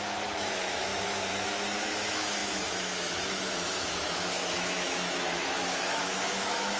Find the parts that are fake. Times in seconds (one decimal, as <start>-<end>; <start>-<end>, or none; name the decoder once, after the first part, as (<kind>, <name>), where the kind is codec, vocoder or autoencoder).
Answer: 0.0-6.8 (autoencoder, DAC-VAE)